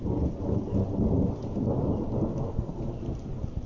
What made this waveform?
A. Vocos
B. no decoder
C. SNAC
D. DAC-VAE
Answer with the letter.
B